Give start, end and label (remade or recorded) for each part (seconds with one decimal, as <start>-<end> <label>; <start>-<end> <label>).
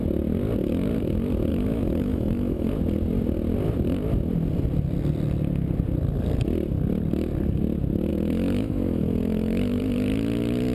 0.0-1.5 recorded; 1.5-2.7 remade; 2.7-8.1 recorded; 8.1-9.8 remade; 9.8-10.7 recorded